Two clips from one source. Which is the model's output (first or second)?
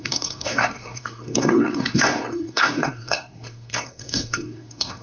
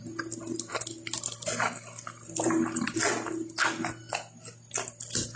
first